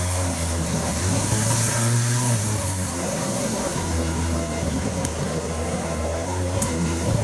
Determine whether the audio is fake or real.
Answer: fake